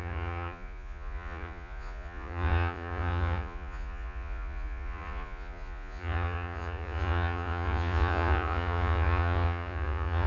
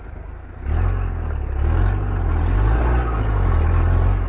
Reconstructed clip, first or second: first